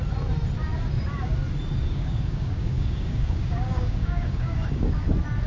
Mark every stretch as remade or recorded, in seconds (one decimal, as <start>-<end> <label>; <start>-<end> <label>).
0.0-1.8 recorded; 1.8-5.1 remade; 5.1-5.5 recorded